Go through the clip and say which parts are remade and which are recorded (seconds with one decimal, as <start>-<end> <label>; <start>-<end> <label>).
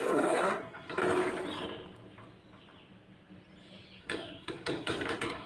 0.0-1.0 remade; 1.0-4.0 recorded; 4.0-5.5 remade